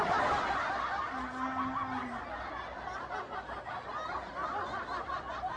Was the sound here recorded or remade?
recorded